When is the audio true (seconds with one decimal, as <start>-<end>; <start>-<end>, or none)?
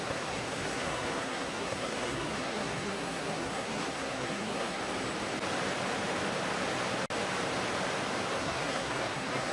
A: 4.8-8.4